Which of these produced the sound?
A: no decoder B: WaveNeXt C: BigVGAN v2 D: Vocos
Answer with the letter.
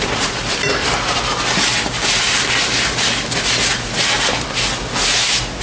A